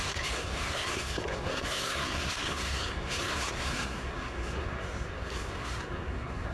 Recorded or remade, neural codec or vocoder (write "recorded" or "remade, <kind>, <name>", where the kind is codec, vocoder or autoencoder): remade, codec, SNAC